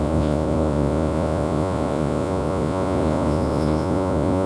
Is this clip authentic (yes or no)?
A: no